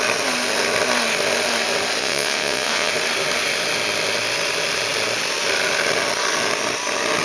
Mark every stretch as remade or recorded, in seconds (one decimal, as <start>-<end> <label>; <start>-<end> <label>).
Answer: 0.0-2.0 recorded; 2.0-2.9 remade; 2.9-7.2 recorded